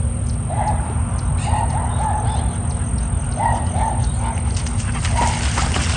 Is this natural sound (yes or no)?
yes